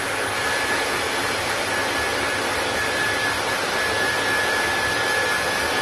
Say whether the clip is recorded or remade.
recorded